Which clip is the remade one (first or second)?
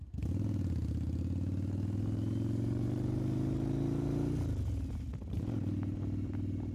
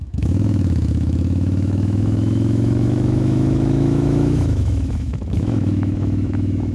second